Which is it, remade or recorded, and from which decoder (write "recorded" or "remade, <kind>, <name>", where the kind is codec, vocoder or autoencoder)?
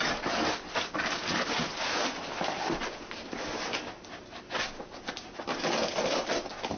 recorded